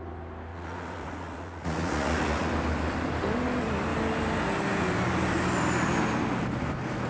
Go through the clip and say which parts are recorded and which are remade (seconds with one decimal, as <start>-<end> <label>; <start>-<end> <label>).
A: 0.0-0.5 recorded; 0.5-2.5 remade; 2.5-7.1 recorded

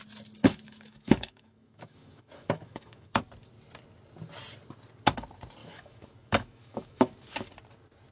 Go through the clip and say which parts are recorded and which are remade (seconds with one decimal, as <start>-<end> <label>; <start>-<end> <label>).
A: 0.0-0.4 recorded; 0.4-3.2 remade; 3.2-5.6 recorded; 5.6-7.1 remade; 7.1-8.1 recorded

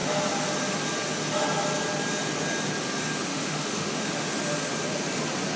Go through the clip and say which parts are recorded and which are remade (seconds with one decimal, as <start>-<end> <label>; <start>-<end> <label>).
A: 0.0-3.3 recorded; 3.3-4.1 remade; 4.1-5.6 recorded